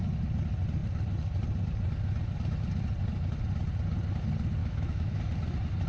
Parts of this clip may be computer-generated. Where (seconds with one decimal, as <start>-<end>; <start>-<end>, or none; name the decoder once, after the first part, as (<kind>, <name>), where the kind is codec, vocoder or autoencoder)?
4.6-5.2 (autoencoder, DAC-VAE)